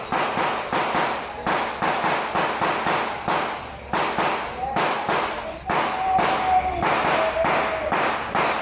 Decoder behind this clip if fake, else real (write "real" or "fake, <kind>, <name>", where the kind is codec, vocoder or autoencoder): real